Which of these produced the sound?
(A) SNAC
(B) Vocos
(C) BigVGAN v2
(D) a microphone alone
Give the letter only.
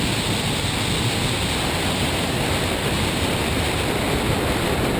D